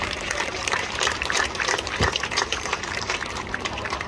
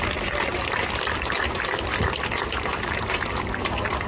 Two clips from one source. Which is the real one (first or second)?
second